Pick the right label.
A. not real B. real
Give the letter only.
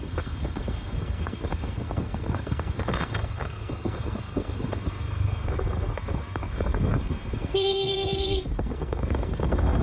A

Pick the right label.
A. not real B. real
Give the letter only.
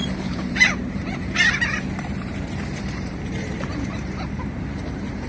A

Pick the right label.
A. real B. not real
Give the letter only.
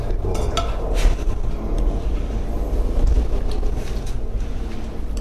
A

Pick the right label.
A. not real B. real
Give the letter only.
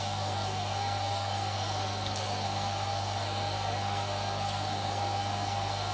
A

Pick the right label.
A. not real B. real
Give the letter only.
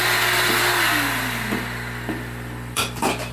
B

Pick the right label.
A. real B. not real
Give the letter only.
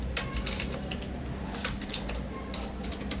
A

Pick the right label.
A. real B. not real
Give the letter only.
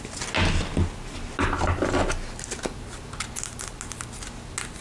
A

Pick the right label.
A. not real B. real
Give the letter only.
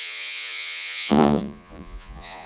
A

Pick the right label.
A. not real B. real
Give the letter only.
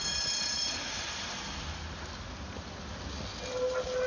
B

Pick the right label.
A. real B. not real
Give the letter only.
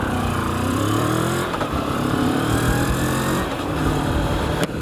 B